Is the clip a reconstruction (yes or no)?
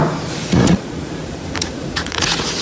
yes